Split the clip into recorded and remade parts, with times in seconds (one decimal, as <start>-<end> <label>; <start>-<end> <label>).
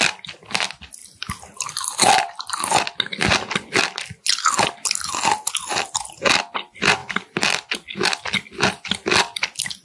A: 0.0-9.8 recorded